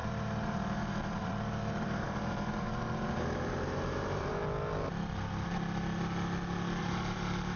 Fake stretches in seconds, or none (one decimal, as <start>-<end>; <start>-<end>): 0.0-4.4; 6.8-7.6